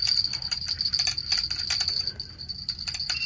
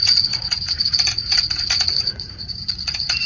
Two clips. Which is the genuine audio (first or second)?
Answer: first